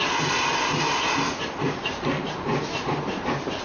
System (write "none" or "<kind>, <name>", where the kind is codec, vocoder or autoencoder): none